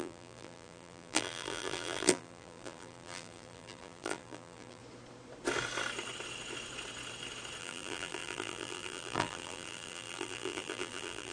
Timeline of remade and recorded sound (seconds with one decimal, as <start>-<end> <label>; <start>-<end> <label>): 0.0-4.8 remade; 4.8-7.6 recorded; 7.6-11.3 remade